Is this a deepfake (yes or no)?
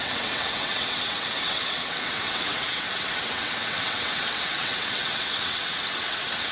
yes